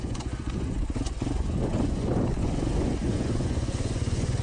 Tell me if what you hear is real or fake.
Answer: fake